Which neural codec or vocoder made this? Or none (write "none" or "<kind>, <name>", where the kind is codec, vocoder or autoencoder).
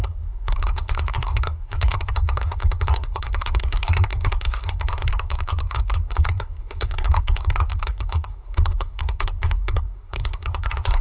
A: codec, SNAC